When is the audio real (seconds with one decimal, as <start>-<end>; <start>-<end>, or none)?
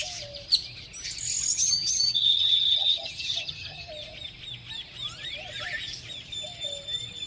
0.0-1.5; 3.9-7.3